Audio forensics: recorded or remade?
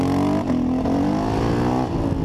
recorded